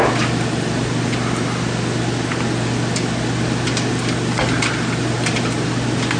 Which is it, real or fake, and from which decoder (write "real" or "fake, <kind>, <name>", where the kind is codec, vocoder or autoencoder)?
real